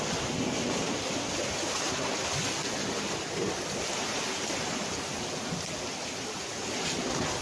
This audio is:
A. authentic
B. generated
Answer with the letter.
A